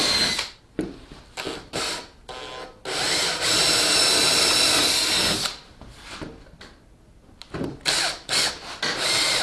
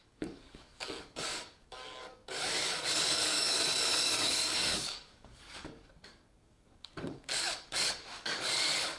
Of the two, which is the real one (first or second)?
first